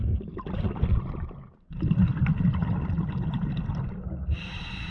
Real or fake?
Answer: real